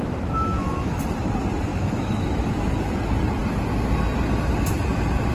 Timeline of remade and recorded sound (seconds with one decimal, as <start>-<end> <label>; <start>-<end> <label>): 0.0-1.0 remade; 1.0-1.7 recorded; 1.7-2.6 remade; 2.6-5.3 recorded